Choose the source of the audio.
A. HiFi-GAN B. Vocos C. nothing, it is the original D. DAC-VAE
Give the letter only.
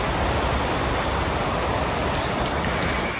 C